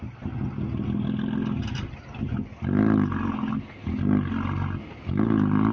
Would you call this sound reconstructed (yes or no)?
no